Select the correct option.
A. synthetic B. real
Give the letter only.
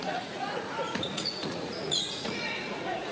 A